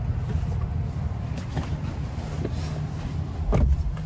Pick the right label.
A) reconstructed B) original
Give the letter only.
B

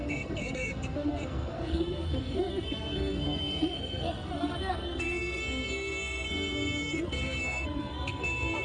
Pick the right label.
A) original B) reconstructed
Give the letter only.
B